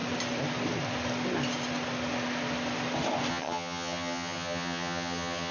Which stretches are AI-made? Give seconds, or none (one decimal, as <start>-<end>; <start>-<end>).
3.3-5.5